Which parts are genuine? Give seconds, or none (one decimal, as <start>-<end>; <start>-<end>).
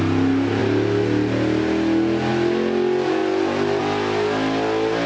0.0-5.1